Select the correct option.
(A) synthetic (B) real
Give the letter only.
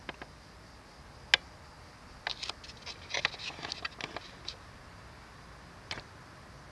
B